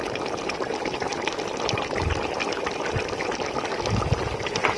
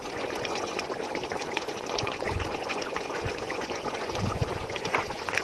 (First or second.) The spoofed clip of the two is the second